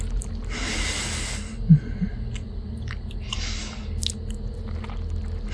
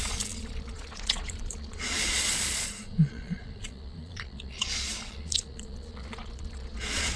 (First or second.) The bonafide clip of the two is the first